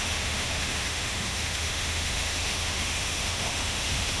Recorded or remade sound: remade